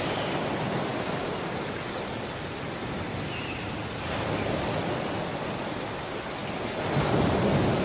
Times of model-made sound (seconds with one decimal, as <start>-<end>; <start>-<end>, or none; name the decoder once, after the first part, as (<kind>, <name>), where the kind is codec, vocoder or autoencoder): none